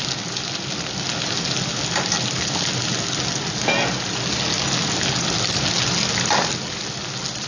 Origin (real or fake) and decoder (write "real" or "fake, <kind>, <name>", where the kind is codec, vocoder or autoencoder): real